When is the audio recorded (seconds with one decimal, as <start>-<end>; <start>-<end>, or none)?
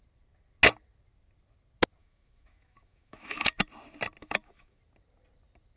0.0-2.0; 3.7-4.2; 4.8-5.8